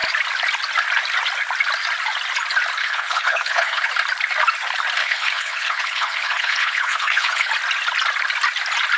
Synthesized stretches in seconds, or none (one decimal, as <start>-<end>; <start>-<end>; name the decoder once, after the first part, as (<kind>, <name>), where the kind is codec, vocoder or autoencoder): 2.8-3.9 (codec, HILCodec); 5.0-7.5